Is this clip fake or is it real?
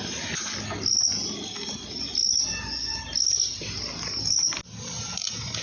real